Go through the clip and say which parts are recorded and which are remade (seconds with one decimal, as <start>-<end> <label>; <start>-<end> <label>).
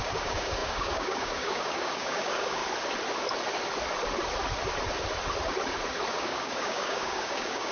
0.0-2.6 remade; 2.6-6.1 recorded; 6.1-7.7 remade